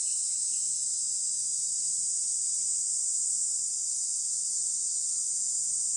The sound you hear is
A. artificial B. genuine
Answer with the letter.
B